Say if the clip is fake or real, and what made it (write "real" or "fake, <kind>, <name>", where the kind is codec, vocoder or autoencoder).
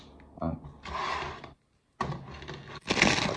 real